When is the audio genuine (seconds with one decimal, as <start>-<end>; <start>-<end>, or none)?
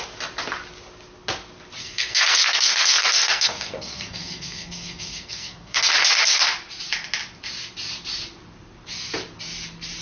0.0-1.8; 5.8-10.0